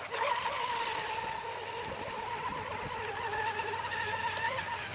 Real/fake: fake